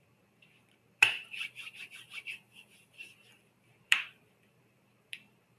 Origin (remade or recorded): remade